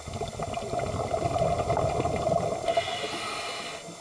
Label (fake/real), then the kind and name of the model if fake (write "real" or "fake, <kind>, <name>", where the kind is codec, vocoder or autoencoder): real